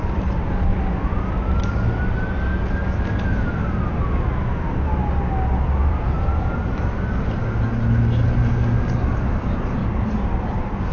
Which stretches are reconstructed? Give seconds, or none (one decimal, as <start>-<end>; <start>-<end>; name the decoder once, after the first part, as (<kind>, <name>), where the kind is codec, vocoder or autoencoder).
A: 0.0-0.7 (vocoder, BigVGAN v2); 6.0-6.6; 9.1-9.8; 10.5-10.9